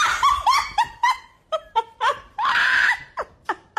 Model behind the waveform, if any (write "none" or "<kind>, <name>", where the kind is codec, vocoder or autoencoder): vocoder, BigVGAN v2